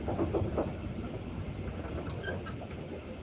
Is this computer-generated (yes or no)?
no